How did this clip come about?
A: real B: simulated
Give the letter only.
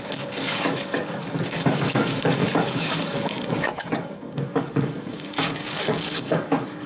B